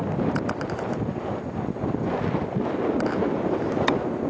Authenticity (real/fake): real